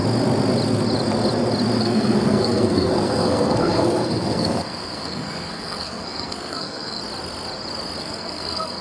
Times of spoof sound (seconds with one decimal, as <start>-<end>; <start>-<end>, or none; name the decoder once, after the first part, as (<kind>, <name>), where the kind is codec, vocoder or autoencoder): 1.8-7.0 (codec, SNAC); 8.0-8.8